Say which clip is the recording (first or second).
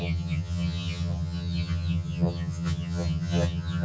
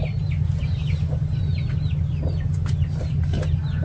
second